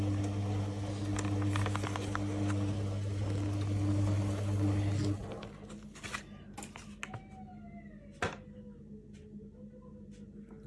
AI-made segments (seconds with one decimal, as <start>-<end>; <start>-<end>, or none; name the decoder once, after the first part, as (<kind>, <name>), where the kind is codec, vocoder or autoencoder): none

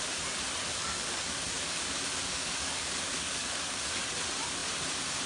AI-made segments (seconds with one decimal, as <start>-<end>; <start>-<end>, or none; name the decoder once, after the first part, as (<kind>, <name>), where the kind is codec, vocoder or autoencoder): 0.8-4.0 (codec, DAC)

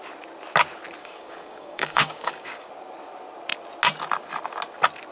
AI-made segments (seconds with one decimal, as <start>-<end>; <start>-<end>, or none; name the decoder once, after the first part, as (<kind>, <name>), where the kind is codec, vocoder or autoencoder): 1.0-2.7 (codec, DAC)

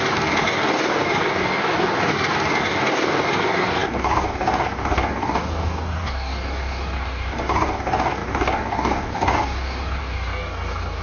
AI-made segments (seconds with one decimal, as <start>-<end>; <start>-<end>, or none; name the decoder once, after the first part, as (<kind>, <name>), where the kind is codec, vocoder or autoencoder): 0.0-11.0 (codec, DAC)